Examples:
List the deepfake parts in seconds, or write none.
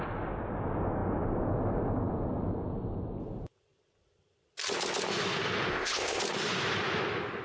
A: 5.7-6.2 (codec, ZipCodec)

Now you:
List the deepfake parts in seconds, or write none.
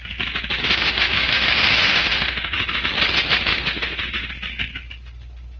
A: 0.6-2.9 (autoencoder, DAC-VAE); 3.5-4.3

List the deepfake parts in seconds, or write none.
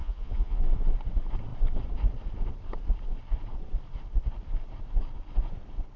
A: 0.0-0.6 (vocoder, Vocos)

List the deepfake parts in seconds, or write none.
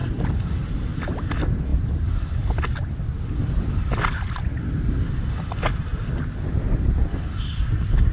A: none